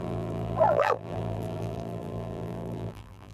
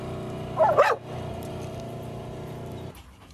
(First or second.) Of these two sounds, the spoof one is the first